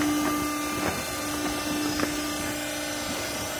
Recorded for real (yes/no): yes